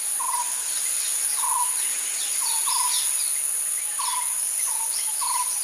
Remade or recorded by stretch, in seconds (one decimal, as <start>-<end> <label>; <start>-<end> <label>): 0.0-5.6 recorded